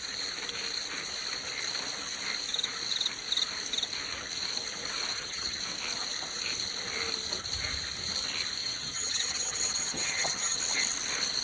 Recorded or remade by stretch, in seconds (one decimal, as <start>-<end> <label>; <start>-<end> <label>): 0.0-5.1 recorded; 5.1-5.6 remade; 5.6-8.6 recorded; 8.6-10.6 remade; 10.6-11.4 recorded